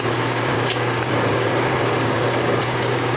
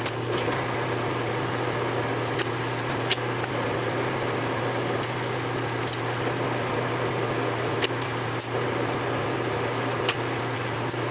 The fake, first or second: first